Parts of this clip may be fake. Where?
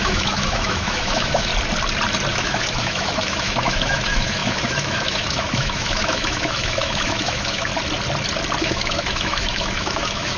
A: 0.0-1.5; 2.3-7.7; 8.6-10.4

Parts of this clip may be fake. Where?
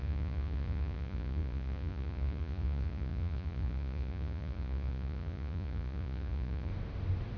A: 0.0-6.7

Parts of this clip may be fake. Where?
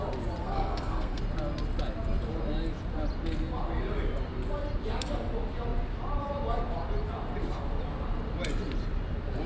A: 0.4-1.2